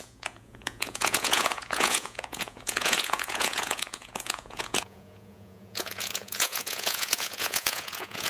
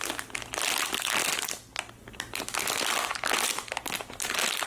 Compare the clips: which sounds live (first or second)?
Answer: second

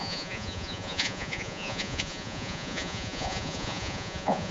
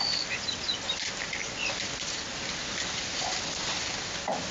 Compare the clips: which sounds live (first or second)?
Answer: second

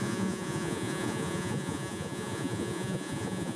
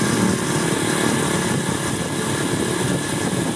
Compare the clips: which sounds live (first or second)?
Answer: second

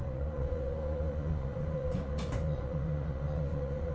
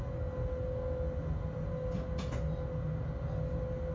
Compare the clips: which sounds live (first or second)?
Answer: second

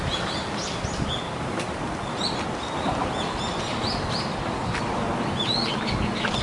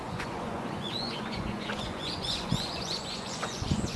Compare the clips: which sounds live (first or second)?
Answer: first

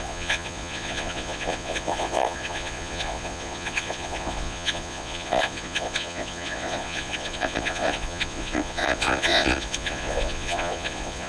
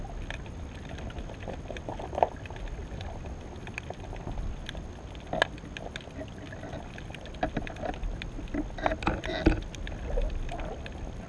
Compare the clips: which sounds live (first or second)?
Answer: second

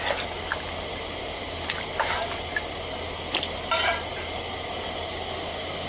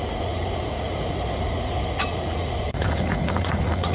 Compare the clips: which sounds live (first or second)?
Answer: first